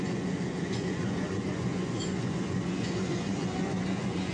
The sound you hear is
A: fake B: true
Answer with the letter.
A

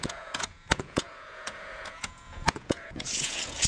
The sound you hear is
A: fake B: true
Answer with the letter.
A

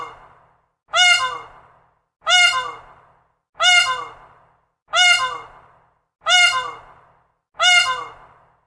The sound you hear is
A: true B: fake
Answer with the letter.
A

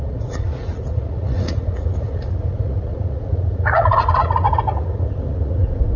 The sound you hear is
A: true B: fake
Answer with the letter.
B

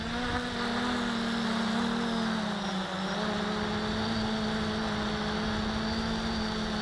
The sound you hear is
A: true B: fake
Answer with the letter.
A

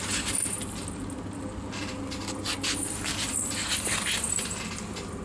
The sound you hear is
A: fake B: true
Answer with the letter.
B